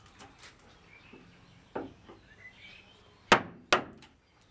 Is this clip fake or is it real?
real